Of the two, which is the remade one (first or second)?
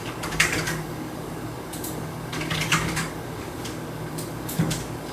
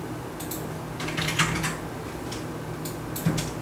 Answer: first